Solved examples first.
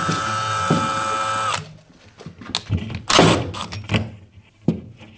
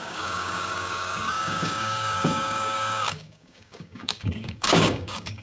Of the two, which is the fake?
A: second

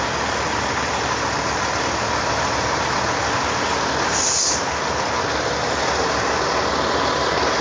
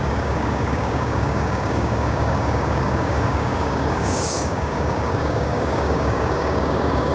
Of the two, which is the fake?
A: second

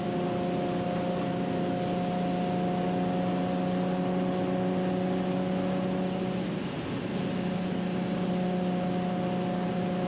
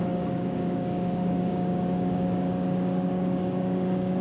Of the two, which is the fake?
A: second